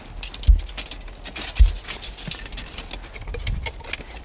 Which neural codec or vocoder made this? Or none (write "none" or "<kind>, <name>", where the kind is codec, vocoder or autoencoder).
none